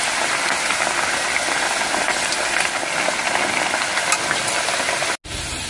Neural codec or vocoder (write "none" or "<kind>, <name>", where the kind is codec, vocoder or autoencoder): none